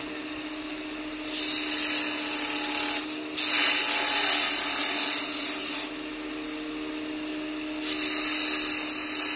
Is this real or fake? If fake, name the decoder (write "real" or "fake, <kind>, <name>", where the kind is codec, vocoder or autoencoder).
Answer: real